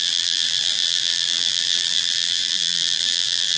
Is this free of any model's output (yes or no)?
no